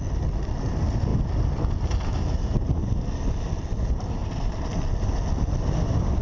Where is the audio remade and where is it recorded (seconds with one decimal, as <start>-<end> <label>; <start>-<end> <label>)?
0.0-6.2 recorded